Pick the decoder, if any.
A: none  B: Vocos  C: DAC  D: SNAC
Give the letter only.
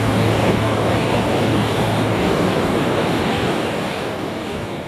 C